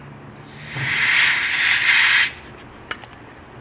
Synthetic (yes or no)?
no